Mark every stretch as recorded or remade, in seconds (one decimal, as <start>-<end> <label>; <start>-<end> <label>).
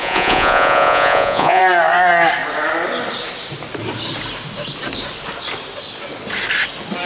0.0-1.6 remade; 1.6-7.1 recorded